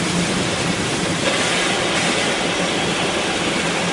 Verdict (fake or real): real